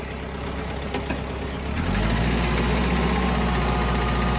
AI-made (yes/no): no